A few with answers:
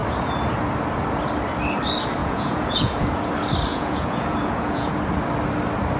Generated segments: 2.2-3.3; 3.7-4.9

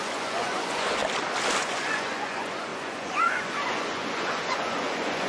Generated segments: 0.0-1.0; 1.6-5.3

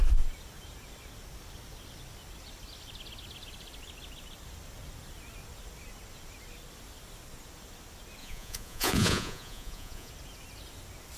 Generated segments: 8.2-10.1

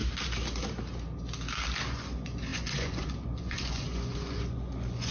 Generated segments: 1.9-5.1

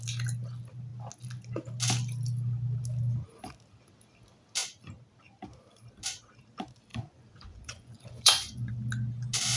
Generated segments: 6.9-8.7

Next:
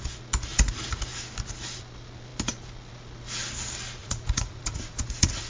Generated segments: 0.5-1.1; 4.0-5.5

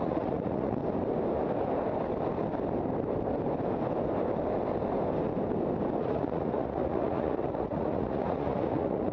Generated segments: 0.0-0.8; 6.0-9.1